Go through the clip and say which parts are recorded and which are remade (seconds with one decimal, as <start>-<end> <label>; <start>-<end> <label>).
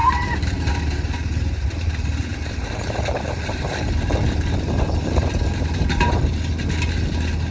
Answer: 0.0-0.6 remade; 0.6-2.3 recorded; 2.3-6.2 remade; 6.2-7.5 recorded